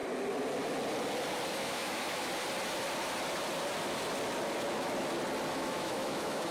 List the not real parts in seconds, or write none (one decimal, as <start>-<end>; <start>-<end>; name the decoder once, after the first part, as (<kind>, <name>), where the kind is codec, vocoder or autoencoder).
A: 1.5-2.3 (autoencoder, DAC-VAE); 5.5-6.5